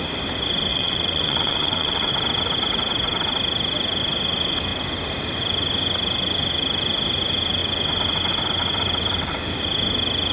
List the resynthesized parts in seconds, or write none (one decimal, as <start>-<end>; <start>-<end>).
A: 0.7-2.1